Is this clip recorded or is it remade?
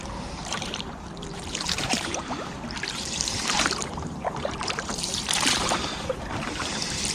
remade